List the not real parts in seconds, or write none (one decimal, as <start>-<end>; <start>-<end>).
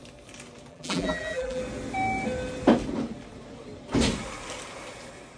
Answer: 0.7-1.6